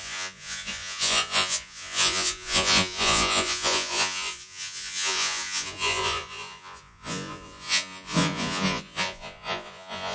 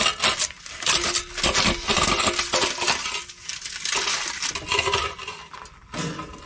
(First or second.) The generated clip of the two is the first